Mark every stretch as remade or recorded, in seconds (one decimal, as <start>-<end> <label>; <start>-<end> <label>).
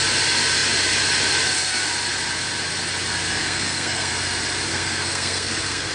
0.0-3.4 recorded; 3.4-4.1 remade; 4.1-4.7 recorded; 4.7-5.9 remade